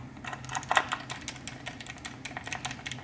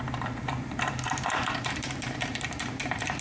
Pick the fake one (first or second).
second